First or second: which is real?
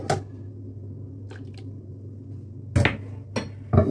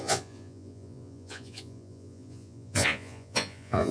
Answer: first